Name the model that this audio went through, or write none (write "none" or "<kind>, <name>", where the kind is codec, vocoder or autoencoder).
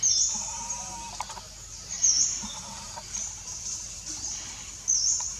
vocoder, BigVGAN v2